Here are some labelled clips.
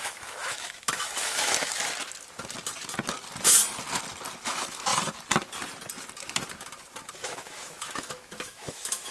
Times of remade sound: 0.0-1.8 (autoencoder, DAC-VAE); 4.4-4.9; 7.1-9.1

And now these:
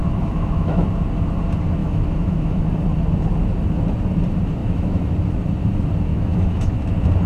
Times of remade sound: 0.0-0.9 (autoencoder, DAC-VAE); 1.8-2.6; 4.6-5.1; 6.1-6.8

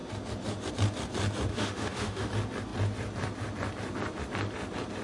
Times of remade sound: 1.5-2.3 (autoencoder, DAC-VAE)

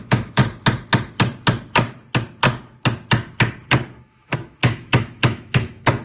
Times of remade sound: 0.0-0.4 (autoencoder, DAC-VAE); 4.0-6.0

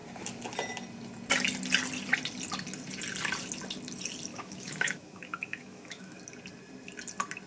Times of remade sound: 4.3-6.2 (autoencoder, DAC-VAE)

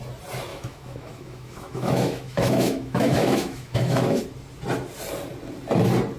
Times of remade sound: 0.5-4.2 (autoencoder, DAC-VAE)

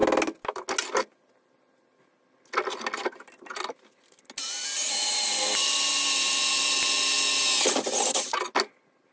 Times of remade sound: none

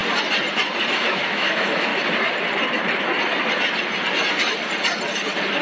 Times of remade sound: 0.9-1.9 (autoencoder, DAC-VAE)